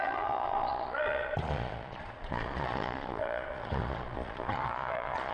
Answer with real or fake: fake